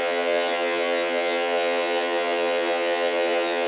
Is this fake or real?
fake